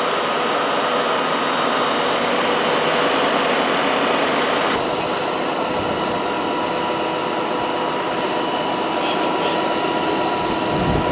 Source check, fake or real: real